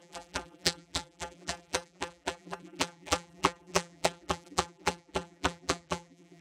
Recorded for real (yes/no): no